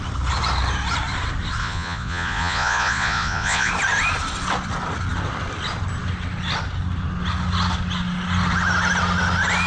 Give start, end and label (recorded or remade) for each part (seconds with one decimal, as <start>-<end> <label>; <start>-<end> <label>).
0.0-1.6 recorded; 1.6-3.7 remade; 3.7-9.7 recorded